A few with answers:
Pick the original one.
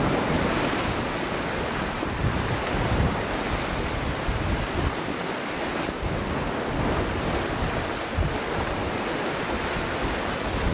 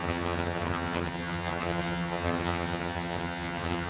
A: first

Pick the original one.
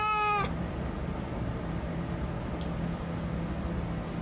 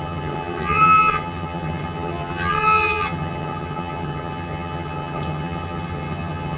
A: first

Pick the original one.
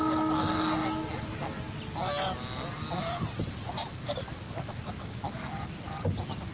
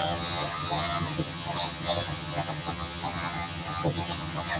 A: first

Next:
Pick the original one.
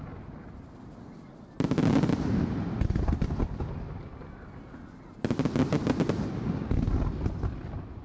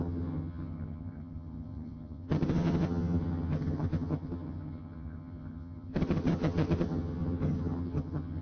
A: first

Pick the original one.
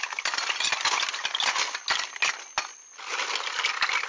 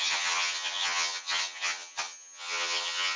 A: first